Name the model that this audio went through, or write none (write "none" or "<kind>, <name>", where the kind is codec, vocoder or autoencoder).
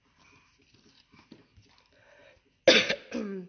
none